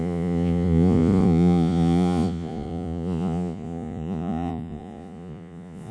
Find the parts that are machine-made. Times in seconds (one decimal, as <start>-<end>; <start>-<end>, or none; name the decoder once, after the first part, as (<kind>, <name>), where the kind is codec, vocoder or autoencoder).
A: 0.0-5.9 (vocoder, Vocos)